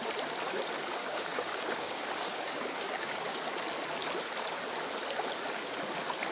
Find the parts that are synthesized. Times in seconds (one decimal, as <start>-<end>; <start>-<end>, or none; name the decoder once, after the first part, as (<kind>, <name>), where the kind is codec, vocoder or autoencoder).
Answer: 1.0-3.4 (codec, DAC)